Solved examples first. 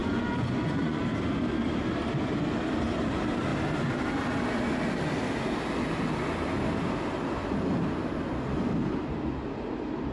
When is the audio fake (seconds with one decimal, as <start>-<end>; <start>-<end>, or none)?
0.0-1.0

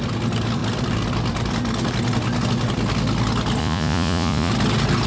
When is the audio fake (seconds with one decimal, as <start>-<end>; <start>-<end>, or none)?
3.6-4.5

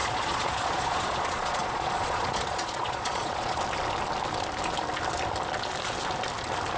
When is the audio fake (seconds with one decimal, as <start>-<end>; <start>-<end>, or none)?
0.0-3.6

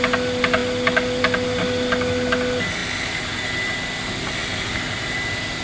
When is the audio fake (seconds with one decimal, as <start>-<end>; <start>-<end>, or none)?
none

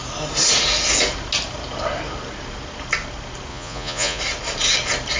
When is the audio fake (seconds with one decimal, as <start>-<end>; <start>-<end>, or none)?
3.5-4.2

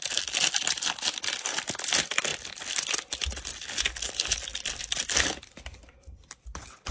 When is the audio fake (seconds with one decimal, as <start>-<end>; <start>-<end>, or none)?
none